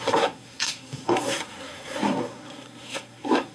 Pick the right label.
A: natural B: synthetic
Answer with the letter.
B